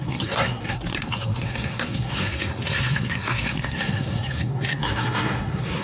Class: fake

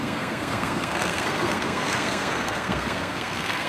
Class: fake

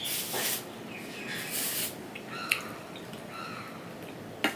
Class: real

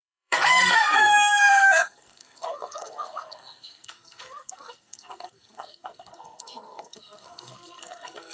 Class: fake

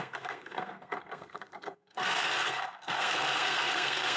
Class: fake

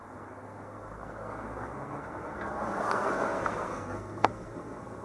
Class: fake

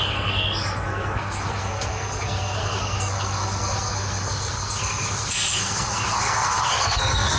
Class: fake